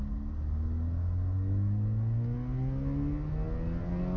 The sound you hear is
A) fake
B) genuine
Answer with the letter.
B